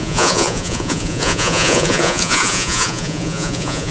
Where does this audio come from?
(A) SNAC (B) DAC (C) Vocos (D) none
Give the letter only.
C